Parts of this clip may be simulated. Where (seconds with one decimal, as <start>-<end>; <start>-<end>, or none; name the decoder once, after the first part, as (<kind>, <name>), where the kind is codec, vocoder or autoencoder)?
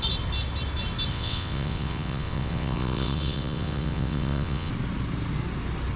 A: 1.1-4.7 (vocoder, WaveNeXt)